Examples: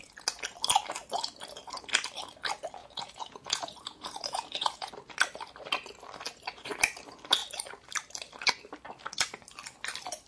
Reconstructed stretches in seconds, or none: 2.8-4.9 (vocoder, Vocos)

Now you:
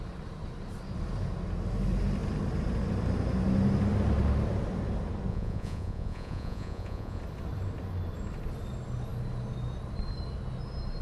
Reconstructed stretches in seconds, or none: 5.3-7.2 (vocoder, Vocos)

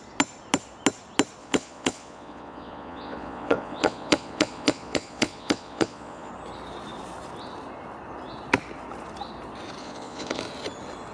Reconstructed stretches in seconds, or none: 1.4-6.3 (vocoder, Vocos); 9.8-10.4

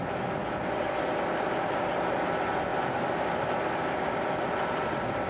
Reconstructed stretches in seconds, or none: none

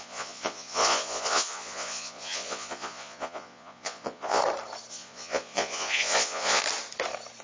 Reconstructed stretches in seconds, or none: 0.0-4.4 (vocoder, Vocos); 4.9-6.6